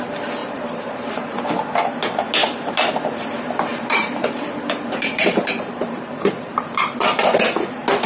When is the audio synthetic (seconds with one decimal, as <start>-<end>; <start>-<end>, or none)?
0.4-1.4; 2.4-2.9; 3.7-7.2